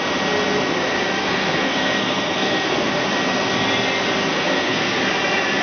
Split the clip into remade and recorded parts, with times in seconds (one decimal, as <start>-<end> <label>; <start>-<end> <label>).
0.0-1.2 recorded; 1.2-3.1 remade; 3.1-4.3 recorded; 4.3-5.0 remade; 5.0-5.6 recorded